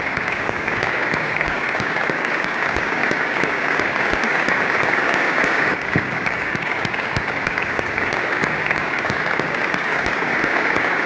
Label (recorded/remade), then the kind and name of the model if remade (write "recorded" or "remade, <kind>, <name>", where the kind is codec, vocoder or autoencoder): remade, codec, DAC